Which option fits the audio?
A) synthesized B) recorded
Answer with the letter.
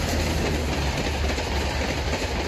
B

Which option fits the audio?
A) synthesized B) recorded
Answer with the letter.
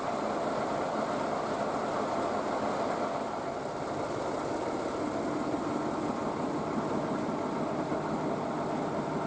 B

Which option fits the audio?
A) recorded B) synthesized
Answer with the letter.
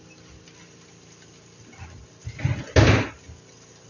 A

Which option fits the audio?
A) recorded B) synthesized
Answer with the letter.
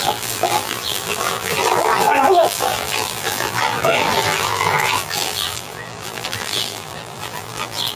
B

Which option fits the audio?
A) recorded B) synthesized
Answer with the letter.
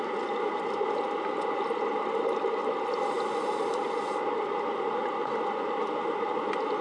A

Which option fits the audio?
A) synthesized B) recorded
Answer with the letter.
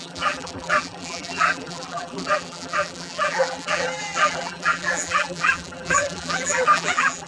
A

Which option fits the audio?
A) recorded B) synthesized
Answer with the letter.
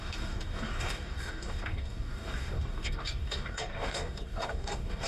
B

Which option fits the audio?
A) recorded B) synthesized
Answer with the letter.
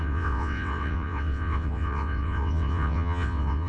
B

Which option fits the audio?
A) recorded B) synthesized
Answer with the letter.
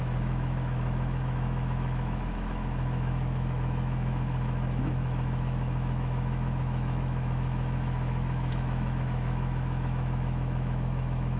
B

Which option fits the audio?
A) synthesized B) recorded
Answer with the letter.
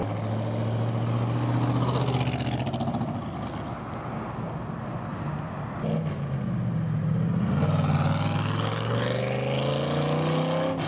B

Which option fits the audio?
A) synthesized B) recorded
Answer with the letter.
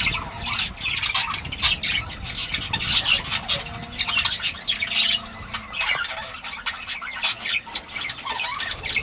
B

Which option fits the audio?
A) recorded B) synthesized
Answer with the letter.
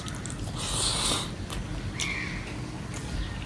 A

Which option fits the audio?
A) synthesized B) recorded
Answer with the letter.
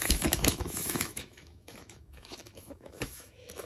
A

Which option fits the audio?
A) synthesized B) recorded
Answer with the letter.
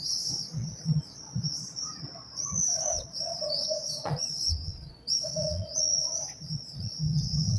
A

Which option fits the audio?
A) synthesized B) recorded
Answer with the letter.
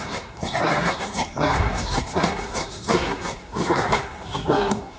A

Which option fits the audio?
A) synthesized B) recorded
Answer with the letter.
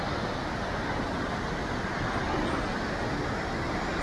B